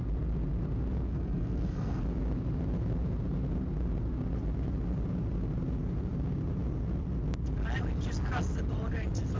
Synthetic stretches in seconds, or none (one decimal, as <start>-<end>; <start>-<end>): 1.1-2.0